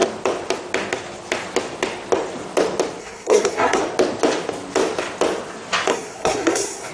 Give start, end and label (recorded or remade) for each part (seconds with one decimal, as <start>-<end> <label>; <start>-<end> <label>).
0.0-3.0 recorded; 3.0-3.8 remade; 3.8-5.9 recorded; 5.9-6.9 remade